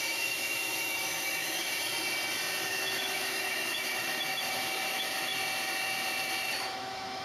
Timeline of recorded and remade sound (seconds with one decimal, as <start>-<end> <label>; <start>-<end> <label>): 0.0-1.9 remade; 1.9-2.7 recorded; 2.7-5.3 remade; 5.3-6.6 recorded; 6.6-7.2 remade